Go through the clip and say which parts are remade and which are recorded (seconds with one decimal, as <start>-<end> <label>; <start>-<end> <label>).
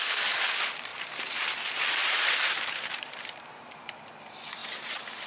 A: 0.0-0.9 recorded; 0.9-4.1 remade; 4.1-4.6 recorded; 4.6-5.3 remade